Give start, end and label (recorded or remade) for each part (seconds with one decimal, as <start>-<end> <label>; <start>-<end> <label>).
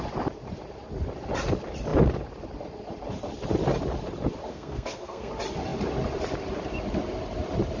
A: 0.0-4.5 recorded; 4.5-5.3 remade; 5.3-7.8 recorded